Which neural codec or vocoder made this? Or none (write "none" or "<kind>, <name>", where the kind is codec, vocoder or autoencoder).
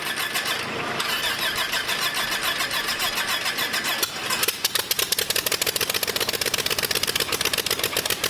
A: none